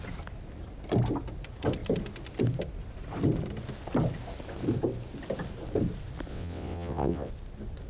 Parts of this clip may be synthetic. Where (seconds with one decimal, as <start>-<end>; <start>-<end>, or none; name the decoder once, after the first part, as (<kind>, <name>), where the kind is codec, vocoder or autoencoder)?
6.3-7.3 (vocoder, WaveNeXt)